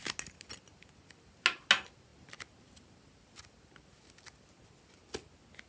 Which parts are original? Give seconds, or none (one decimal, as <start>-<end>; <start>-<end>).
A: 0.0-5.7